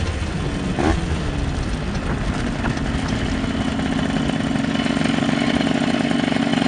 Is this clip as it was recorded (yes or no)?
yes